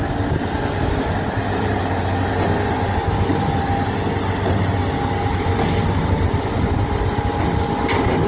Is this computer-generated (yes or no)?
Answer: no